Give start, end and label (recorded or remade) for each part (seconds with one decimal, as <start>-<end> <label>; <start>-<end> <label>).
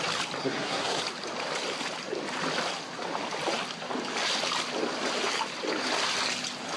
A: 0.0-0.4 recorded; 0.4-1.0 remade; 1.0-6.8 recorded